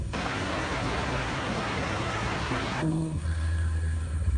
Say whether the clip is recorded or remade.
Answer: remade